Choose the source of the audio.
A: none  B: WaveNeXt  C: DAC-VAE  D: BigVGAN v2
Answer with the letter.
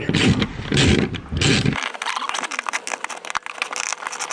A